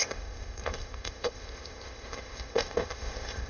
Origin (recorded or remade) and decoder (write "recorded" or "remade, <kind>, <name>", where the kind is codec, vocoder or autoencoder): remade, codec, ZipCodec